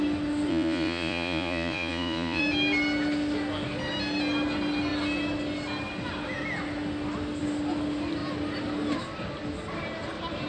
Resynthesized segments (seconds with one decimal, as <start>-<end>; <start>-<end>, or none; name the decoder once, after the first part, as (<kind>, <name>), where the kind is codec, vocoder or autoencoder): 0.5-2.4 (vocoder, Vocos)